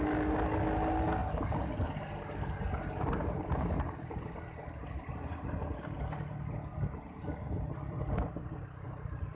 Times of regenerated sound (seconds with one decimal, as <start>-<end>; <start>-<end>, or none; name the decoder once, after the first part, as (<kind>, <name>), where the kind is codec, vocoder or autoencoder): none